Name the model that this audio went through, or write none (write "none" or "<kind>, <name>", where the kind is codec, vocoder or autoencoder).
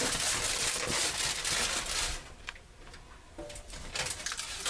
none